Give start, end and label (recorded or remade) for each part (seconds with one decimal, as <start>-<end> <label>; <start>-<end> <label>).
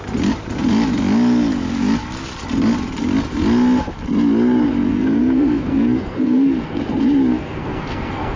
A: 0.0-4.9 recorded; 4.9-6.8 remade; 6.8-7.3 recorded; 7.3-8.4 remade